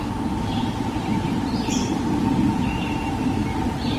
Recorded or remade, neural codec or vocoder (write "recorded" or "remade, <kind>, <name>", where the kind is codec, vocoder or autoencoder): remade, vocoder, BigVGAN v2